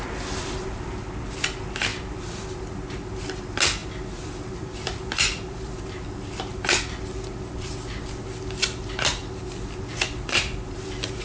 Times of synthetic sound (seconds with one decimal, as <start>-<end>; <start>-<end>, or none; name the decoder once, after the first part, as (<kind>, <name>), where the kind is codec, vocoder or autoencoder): 1.9-2.7 (vocoder, BigVGAN v2); 3.8-6.2; 9.2-11.2